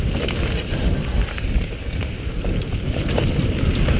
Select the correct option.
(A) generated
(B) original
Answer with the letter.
B